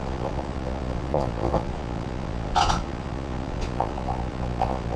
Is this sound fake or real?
fake